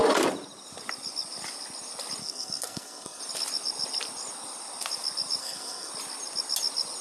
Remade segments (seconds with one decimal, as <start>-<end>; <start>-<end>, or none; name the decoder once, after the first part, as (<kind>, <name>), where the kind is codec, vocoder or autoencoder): 2.2-3.2 (codec, SNAC); 5.4-5.9